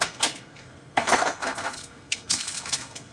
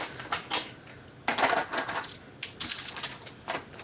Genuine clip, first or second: second